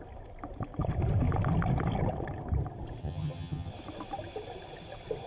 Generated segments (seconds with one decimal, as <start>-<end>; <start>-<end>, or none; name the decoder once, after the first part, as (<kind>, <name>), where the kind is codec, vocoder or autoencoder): 3.0-3.7 (vocoder, HiFi-GAN)